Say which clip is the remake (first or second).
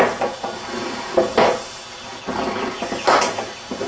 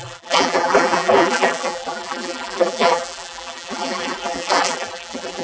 second